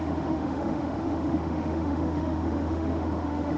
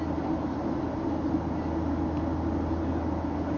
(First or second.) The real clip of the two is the second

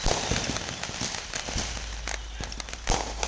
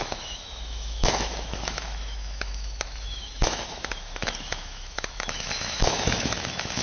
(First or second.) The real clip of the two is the first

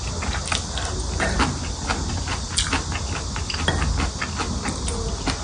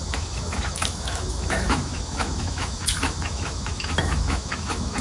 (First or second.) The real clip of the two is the first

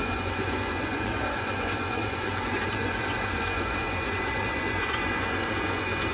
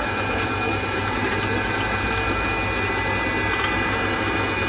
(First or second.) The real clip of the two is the second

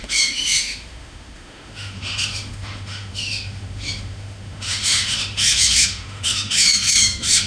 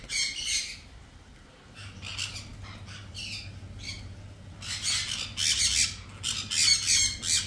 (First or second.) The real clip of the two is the second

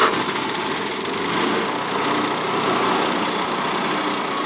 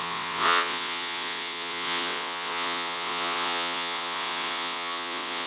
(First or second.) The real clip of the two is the first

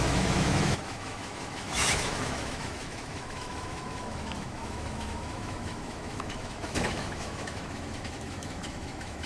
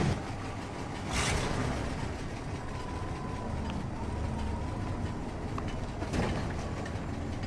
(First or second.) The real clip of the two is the second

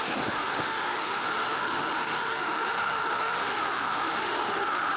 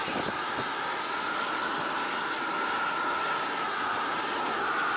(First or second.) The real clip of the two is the second